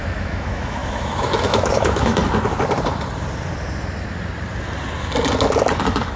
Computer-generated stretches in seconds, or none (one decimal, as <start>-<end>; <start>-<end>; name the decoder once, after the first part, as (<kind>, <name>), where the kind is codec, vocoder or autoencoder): 0.0-2.2 (autoencoder, DAC-VAE)